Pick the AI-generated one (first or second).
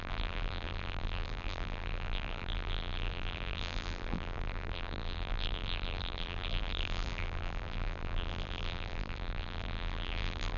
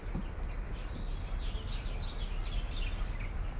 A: first